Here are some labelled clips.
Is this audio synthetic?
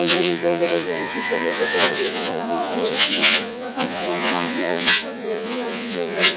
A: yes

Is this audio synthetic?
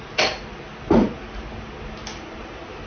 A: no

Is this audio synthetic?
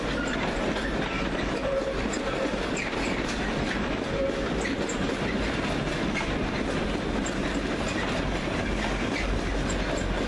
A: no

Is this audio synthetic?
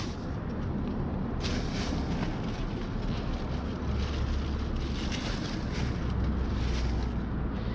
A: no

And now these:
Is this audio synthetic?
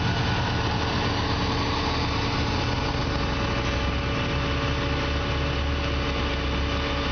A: no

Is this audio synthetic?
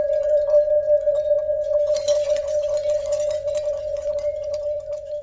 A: yes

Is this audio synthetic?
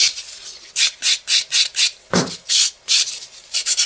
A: no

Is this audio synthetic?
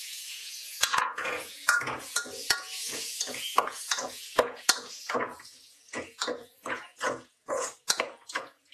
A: yes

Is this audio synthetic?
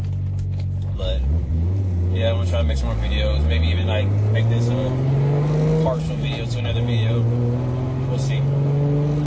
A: no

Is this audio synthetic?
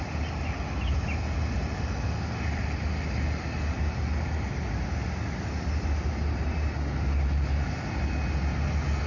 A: no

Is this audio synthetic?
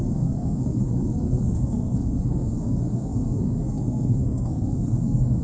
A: yes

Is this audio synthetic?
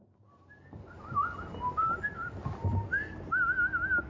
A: no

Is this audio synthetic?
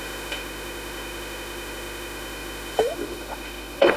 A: yes